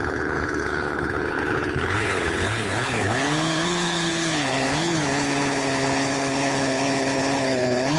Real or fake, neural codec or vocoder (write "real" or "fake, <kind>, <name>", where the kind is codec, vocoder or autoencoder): fake, codec, HILCodec